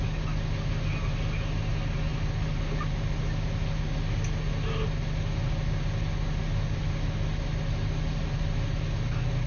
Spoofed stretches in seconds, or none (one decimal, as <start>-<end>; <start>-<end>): none